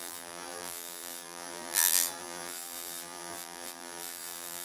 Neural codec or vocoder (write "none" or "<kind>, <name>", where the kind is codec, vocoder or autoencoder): vocoder, BigVGAN v2